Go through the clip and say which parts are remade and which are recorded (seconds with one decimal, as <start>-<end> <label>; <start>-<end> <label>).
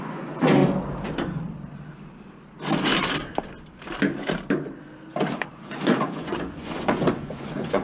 0.0-0.6 remade; 0.6-5.3 recorded; 5.3-7.8 remade